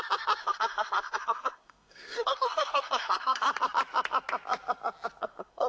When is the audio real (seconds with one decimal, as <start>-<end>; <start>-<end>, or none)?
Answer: 0.0-0.4; 3.5-5.2

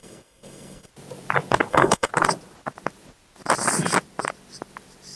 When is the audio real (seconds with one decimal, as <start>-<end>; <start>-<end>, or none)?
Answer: 0.9-1.7; 2.1-5.2

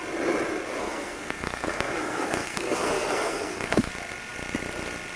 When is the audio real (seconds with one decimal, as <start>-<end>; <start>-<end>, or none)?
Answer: 0.0-0.8; 3.9-5.2

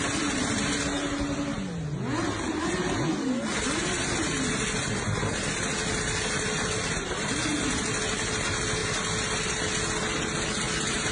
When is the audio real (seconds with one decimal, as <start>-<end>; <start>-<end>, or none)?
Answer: 0.0-11.1

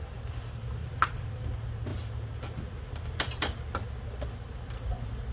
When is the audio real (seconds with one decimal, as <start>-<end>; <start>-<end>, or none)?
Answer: 0.0-5.3

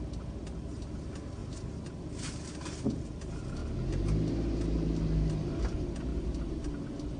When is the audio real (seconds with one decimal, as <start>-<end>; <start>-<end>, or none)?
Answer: 0.0-7.2

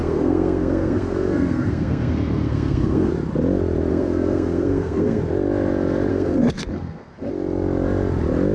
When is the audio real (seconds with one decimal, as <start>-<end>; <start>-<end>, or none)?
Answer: 3.1-3.9; 5.2-6.1; 7.3-8.5

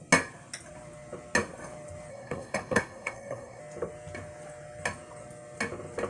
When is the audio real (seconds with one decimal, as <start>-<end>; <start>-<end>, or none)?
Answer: 0.0-2.1; 3.6-6.1